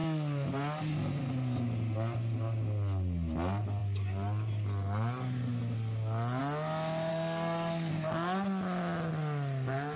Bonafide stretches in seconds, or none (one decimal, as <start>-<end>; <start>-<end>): 0.0-7.1; 7.9-10.0